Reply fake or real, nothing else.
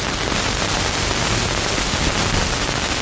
real